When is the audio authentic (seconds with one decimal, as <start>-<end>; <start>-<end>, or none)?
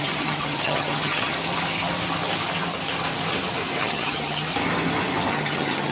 1.3-3.8; 4.5-5.3